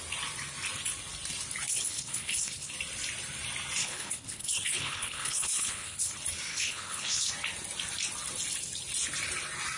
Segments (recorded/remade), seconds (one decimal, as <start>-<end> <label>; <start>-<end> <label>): 0.0-1.7 recorded; 1.7-2.7 remade; 2.7-3.8 recorded; 3.8-6.1 remade; 6.1-6.5 recorded; 6.5-7.3 remade; 7.3-9.8 recorded